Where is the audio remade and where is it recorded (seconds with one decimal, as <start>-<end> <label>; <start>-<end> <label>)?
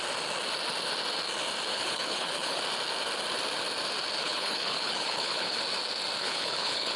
0.0-1.7 recorded; 1.7-2.6 remade; 2.6-4.2 recorded; 4.2-5.6 remade; 5.6-6.2 recorded; 6.2-7.0 remade